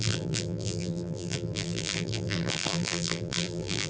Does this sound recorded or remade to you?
remade